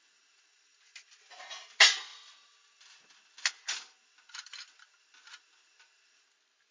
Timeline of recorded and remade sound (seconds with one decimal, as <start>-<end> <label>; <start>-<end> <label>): 0.0-6.7 recorded

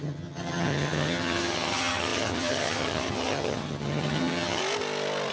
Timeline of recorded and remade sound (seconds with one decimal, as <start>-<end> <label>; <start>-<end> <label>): 0.0-4.6 remade; 4.6-5.3 recorded